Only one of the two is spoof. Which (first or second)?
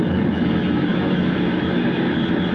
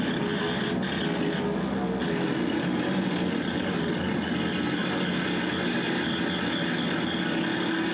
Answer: first